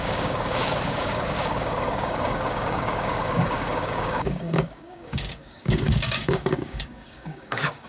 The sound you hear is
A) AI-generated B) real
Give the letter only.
A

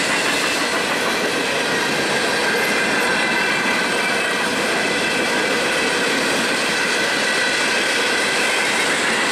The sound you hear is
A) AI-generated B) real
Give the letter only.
B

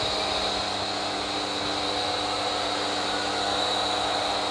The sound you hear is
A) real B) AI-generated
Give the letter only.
A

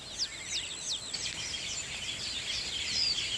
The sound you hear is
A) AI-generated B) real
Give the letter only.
B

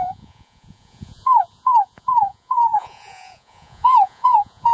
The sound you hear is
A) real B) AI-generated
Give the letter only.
B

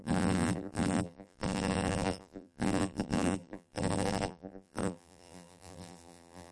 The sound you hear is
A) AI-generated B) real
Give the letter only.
A